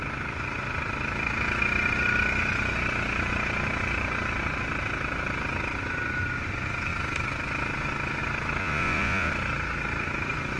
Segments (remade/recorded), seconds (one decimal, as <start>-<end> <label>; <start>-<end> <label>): 0.0-8.6 recorded; 8.6-9.3 remade; 9.3-10.6 recorded